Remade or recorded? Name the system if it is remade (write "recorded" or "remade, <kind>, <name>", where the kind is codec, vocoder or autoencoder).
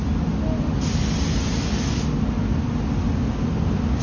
recorded